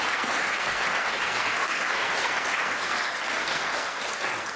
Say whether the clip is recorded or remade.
remade